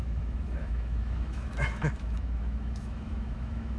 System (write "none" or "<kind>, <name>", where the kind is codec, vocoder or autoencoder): autoencoder, DAC-VAE